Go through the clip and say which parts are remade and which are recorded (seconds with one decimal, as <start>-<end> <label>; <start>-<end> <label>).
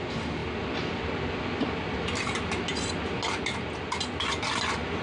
0.0-5.0 recorded